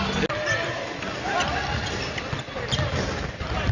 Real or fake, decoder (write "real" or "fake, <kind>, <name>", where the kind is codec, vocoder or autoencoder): real